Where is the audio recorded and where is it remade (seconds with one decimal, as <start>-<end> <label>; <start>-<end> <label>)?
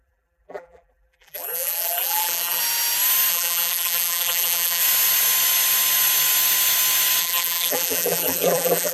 0.0-2.6 remade; 2.6-3.3 recorded; 3.3-4.8 remade; 4.8-7.2 recorded; 7.2-8.9 remade